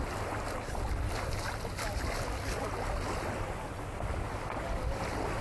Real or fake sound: real